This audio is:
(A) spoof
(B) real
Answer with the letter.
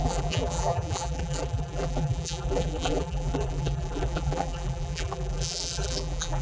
A